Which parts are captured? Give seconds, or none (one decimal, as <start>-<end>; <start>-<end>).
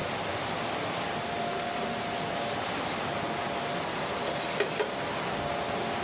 0.0-6.0